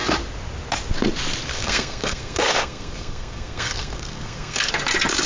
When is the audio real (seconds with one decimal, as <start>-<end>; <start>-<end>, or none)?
0.0-1.5; 4.7-5.3